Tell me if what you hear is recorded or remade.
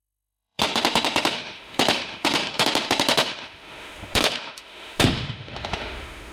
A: remade